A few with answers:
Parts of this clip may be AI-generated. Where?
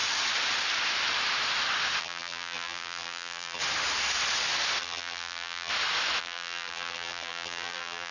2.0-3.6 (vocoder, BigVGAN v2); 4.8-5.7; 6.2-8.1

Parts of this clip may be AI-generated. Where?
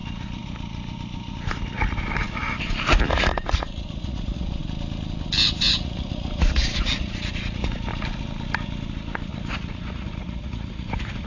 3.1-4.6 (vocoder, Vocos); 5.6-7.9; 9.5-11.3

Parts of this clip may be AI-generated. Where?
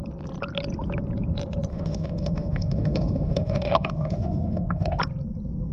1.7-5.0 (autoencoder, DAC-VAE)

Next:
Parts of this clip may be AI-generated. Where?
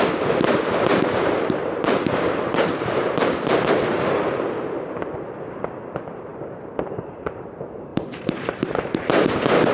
0.9-4.3 (vocoder, BigVGAN v2); 6.3-7.5; 7.9-9.0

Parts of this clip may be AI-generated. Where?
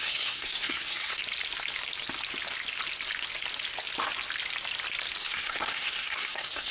0.0-1.2 (codec, SNAC); 5.2-6.7